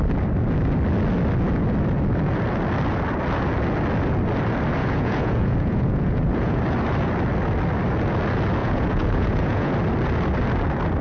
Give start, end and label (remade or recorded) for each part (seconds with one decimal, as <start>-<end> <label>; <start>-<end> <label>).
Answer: 0.0-4.8 recorded; 4.8-6.6 remade; 6.6-8.6 recorded; 8.6-9.7 remade; 9.7-11.0 recorded